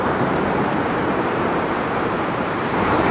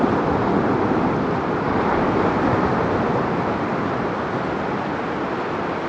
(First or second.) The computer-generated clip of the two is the first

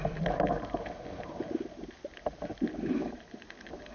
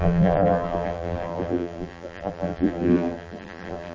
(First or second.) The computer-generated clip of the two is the second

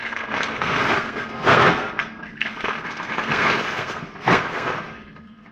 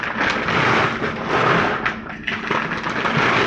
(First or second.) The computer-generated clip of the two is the first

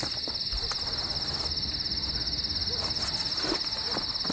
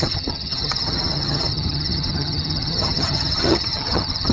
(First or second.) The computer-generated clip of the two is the second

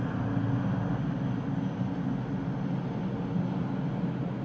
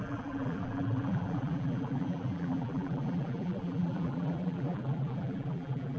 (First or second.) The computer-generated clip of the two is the second